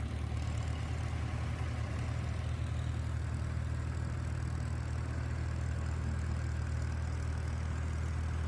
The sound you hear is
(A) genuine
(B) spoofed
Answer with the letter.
A